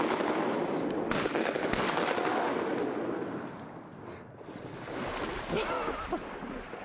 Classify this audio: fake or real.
real